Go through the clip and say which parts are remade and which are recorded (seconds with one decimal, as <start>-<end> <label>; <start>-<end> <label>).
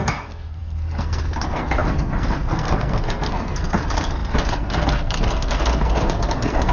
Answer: 0.0-6.7 remade